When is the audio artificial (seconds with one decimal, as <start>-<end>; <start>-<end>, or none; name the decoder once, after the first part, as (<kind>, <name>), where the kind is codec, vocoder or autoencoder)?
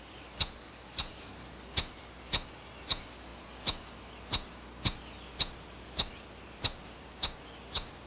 none